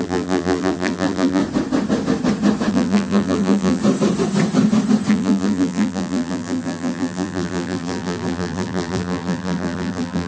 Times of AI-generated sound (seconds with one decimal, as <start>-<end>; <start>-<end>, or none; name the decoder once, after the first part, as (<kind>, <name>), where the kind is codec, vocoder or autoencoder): 0.0-1.4 (vocoder, BigVGAN v2); 2.7-3.8; 5.1-10.3